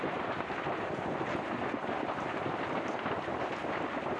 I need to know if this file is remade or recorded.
recorded